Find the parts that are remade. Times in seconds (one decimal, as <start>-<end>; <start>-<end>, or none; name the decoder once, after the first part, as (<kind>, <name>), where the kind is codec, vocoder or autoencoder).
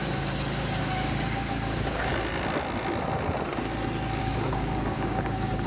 0.8-2.1 (codec, DAC); 4.2-5.7